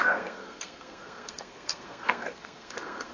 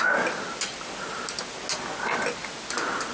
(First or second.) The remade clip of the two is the first